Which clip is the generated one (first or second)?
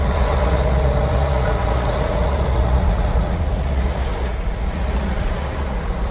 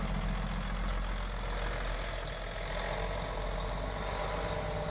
first